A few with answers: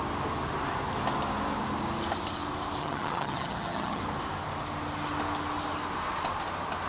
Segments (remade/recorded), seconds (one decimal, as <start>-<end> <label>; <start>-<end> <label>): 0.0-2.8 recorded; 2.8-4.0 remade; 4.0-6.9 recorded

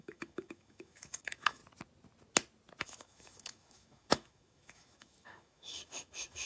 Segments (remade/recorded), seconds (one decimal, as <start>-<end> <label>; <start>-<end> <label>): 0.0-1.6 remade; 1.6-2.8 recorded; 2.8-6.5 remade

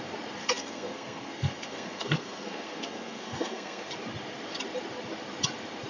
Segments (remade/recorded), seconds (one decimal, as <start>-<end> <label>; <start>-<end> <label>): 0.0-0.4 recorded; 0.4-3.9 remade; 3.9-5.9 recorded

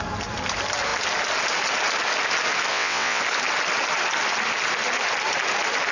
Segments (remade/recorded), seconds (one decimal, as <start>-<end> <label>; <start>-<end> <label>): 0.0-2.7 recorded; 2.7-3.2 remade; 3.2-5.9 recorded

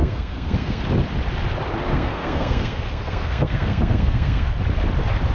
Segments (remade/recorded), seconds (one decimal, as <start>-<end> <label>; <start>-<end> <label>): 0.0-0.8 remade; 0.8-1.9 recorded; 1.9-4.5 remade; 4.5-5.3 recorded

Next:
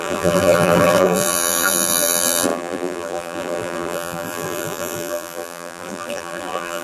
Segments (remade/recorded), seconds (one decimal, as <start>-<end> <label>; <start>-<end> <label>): 0.0-6.8 remade

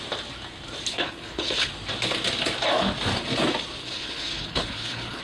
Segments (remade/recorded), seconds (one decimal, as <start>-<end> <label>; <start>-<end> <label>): 0.0-0.9 recorded; 0.9-1.7 remade; 1.7-3.8 recorded; 3.8-5.2 remade

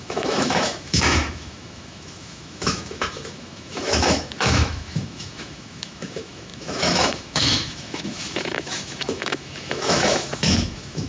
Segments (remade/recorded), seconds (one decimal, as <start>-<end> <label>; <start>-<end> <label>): 0.0-11.1 remade